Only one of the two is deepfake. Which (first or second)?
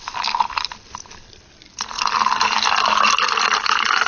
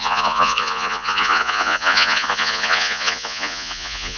second